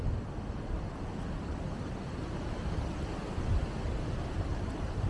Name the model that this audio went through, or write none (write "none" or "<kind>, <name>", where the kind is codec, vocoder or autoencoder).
none